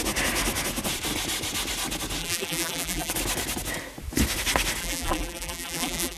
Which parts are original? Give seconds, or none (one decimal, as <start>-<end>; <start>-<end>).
0.0-2.2; 3.1-4.8